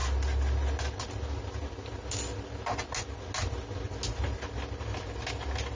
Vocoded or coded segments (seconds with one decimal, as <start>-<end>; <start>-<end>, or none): none